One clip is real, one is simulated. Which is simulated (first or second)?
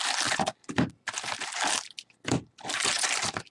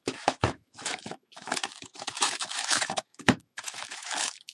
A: second